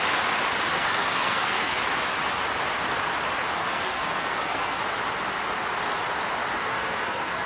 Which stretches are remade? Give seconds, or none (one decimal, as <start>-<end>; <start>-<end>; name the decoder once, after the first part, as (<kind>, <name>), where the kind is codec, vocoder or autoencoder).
0.7-1.8 (codec, SNAC); 3.6-4.8; 6.7-7.5